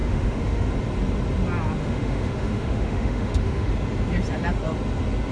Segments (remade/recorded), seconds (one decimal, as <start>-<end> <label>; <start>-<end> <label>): 0.0-0.7 remade; 0.7-1.8 recorded; 1.8-3.7 remade; 3.7-5.3 recorded